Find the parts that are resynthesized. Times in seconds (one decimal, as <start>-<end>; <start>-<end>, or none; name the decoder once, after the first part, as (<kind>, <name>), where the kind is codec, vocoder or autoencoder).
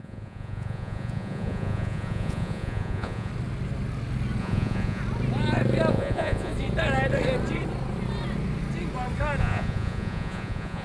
0.0-3.3 (vocoder, Vocos); 4.4-5.0; 5.9-6.5; 9.4-10.8